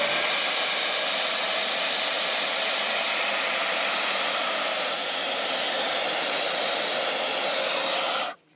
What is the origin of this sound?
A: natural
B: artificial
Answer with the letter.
A